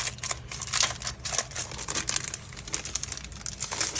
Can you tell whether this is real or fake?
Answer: real